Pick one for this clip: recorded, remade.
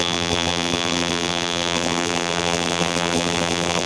remade